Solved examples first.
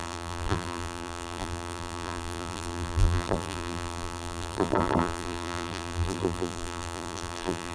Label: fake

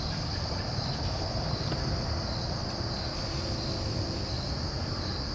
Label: real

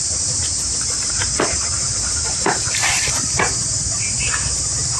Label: fake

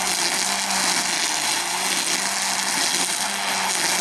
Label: real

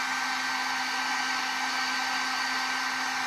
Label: real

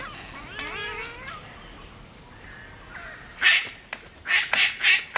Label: real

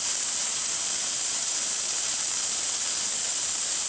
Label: fake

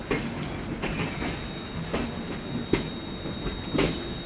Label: real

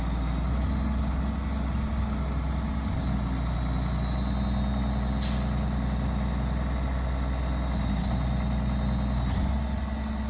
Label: real